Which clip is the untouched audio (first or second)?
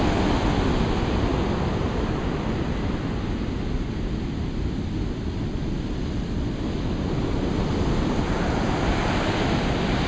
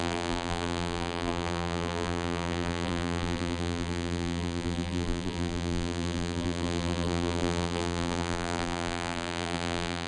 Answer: first